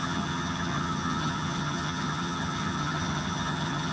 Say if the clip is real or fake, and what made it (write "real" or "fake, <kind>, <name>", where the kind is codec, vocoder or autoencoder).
fake, vocoder, HiFi-GAN